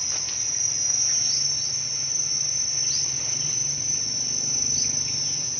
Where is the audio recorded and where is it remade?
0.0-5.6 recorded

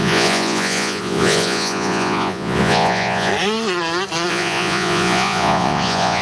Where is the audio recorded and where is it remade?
0.0-3.3 remade; 3.3-4.3 recorded; 4.3-6.2 remade

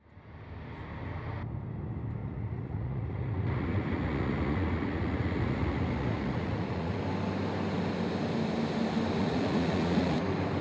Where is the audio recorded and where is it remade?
0.0-2.2 recorded; 2.2-7.0 remade; 7.0-9.2 recorded; 9.2-10.2 remade; 10.2-10.6 recorded

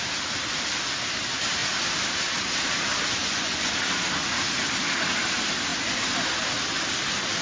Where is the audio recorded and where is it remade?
0.0-3.2 recorded; 3.2-3.7 remade; 3.7-7.4 recorded

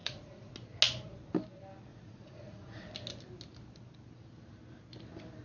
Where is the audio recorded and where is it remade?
0.0-0.5 remade; 0.5-1.9 recorded; 1.9-2.9 remade; 2.9-5.4 recorded

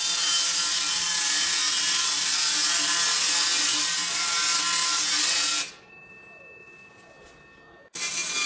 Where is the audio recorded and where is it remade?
0.0-8.5 recorded